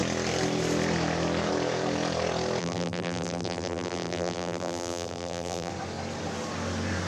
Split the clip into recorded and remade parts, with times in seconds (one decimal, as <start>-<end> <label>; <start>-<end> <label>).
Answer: 0.0-2.6 recorded; 2.6-5.7 remade; 5.7-7.1 recorded